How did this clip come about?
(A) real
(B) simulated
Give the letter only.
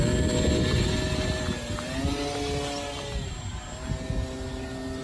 A